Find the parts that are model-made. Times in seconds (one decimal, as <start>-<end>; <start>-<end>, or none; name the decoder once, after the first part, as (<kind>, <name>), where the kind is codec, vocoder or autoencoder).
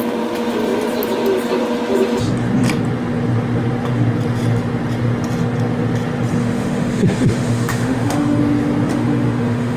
6.4-8.4 (autoencoder, DAC-VAE); 8.9-9.8